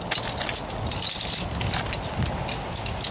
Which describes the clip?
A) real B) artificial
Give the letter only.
A